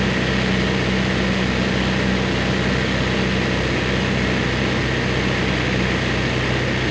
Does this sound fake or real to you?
real